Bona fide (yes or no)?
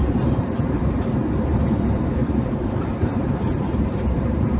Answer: no